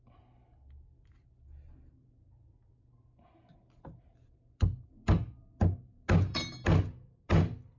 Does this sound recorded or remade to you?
recorded